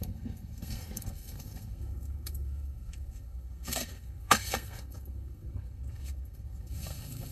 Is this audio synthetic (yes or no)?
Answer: yes